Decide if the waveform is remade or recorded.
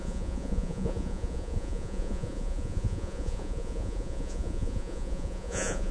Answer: remade